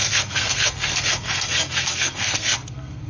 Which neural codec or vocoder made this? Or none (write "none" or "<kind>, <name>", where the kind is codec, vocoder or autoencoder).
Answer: codec, SNAC